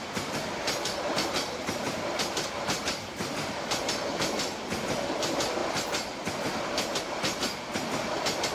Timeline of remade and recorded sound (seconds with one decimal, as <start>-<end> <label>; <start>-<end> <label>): 0.0-8.5 recorded